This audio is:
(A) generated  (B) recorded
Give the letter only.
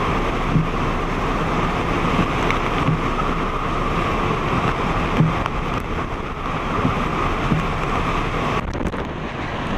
B